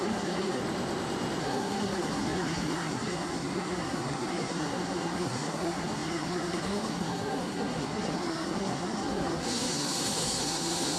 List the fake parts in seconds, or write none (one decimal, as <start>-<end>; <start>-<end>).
0.0-0.6; 1.4-11.0